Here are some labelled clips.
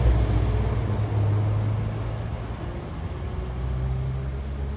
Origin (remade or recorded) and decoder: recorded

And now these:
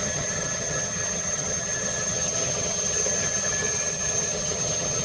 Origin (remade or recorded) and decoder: remade, vocoder, HiFi-GAN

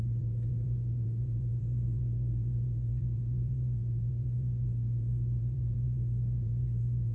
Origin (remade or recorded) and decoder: remade, vocoder, Vocos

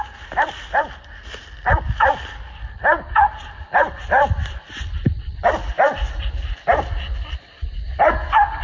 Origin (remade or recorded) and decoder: recorded